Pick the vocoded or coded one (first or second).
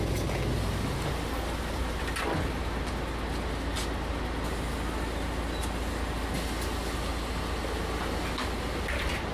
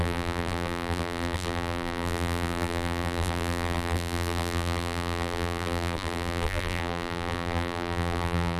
second